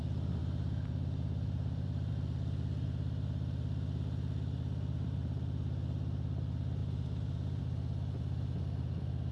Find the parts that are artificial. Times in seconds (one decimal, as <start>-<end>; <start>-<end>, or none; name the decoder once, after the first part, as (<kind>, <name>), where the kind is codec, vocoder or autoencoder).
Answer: 0.4-2.1 (vocoder, BigVGAN v2); 6.8-7.6

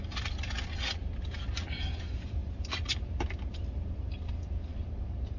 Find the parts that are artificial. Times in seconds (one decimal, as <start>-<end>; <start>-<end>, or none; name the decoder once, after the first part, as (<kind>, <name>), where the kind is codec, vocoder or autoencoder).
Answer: 2.4-3.0 (vocoder, BigVGAN v2)

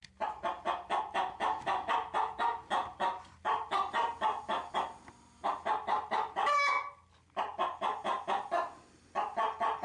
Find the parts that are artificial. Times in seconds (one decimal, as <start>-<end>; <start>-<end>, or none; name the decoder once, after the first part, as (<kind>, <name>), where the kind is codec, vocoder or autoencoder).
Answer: 2.8-3.4 (vocoder, BigVGAN v2)